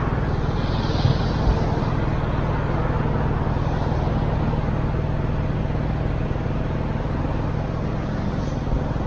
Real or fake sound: real